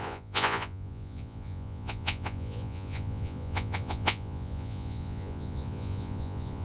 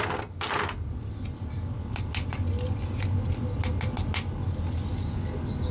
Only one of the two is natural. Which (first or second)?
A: second